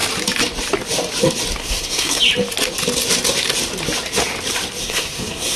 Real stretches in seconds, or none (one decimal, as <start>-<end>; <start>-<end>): 0.0-1.6; 2.2-4.8